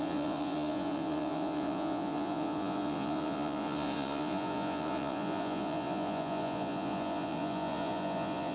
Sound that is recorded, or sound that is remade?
remade